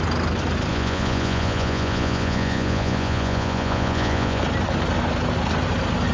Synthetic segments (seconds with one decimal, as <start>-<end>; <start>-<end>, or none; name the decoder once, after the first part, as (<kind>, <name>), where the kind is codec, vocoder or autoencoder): 0.7-4.4 (vocoder, Vocos)